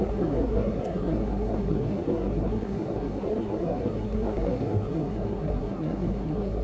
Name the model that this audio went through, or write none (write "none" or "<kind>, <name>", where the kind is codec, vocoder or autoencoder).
codec, SNAC